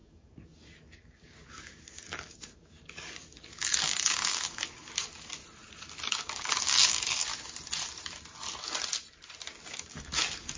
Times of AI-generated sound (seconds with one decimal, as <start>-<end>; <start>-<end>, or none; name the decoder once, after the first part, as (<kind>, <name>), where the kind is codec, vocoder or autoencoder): 0.0-5.4 (codec, DAC); 6.1-7.3; 9.7-10.6